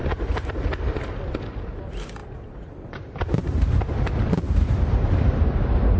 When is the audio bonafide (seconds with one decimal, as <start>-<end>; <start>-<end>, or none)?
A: 0.5-2.2; 5.2-6.0